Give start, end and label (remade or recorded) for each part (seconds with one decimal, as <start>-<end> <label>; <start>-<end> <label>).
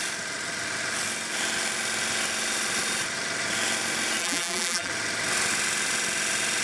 0.0-4.2 recorded; 4.2-4.9 remade; 4.9-6.6 recorded